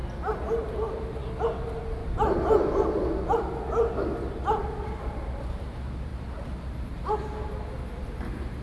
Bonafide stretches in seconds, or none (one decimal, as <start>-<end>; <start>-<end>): 0.0-8.6